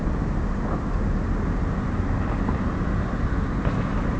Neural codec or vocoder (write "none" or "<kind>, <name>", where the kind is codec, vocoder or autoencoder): none